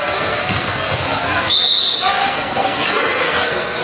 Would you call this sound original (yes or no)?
no